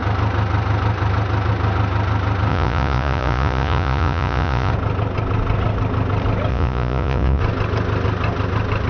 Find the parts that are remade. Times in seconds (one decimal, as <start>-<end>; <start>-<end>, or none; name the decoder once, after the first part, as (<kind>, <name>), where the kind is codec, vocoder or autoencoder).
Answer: 2.5-4.7 (vocoder, Vocos); 6.5-7.4